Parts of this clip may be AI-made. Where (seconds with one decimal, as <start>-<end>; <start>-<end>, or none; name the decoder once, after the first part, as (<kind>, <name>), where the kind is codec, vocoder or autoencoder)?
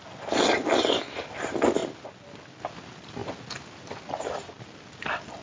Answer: none